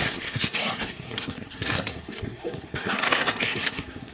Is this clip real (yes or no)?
no